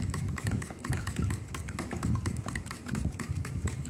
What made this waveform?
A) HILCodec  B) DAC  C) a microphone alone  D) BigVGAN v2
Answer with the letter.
B